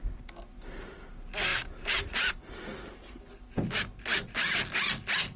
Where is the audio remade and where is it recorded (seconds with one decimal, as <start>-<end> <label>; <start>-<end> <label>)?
0.0-1.5 recorded; 1.5-2.3 remade; 2.3-5.4 recorded